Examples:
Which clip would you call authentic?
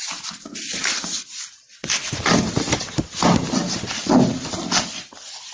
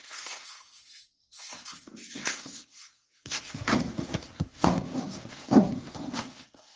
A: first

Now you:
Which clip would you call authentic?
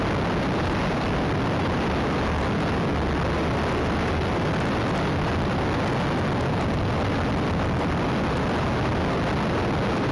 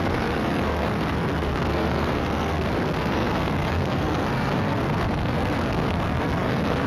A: first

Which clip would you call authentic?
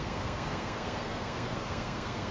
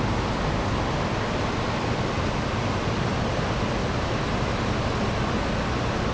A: second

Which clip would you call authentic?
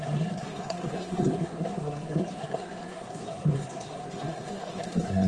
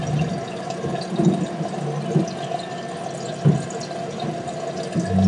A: second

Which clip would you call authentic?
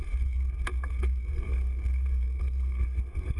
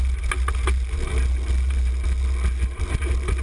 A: second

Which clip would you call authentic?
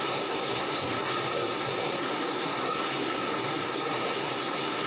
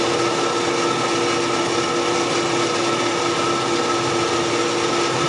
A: second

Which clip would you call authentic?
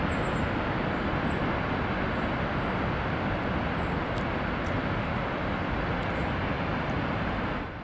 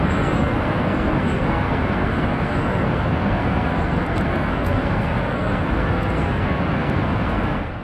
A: first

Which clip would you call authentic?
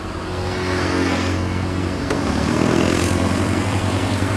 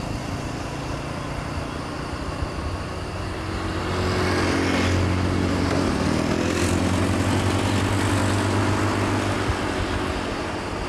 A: second